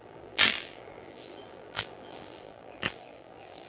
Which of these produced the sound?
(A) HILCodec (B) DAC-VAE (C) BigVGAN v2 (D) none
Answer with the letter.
C